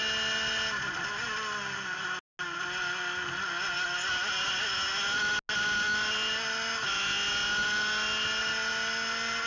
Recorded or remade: recorded